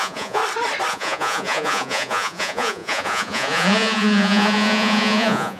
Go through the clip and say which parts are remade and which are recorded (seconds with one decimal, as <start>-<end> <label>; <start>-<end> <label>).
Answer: 0.0-0.4 remade; 0.4-0.9 recorded; 0.9-5.6 remade